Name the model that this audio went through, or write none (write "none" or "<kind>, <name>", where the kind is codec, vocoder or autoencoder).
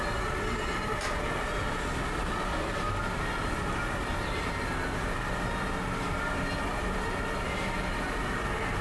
none